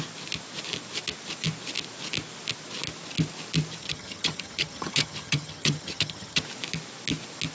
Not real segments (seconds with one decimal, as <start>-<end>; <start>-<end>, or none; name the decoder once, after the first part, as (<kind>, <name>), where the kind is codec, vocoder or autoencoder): 3.8-6.4 (vocoder, HiFi-GAN)